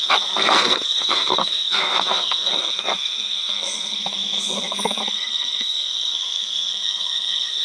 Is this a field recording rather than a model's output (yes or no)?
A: no